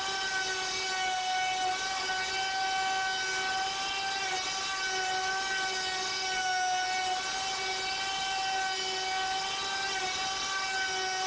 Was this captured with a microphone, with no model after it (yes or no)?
yes